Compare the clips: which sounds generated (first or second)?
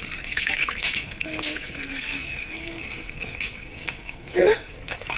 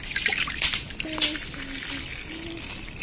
first